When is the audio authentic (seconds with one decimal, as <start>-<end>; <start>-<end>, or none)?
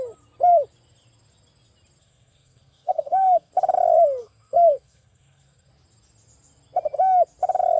0.0-2.0; 3.5-4.2; 5.7-7.8